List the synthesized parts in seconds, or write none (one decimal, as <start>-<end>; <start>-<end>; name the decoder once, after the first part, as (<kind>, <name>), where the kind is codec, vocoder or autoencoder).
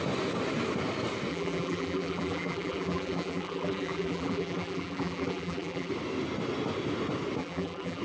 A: 1.3-5.9 (vocoder, BigVGAN v2); 7.4-8.0